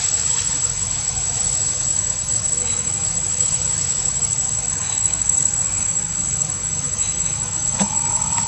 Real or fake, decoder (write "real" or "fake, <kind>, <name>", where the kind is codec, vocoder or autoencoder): fake, autoencoder, DAC-VAE